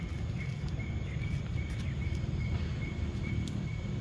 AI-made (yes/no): no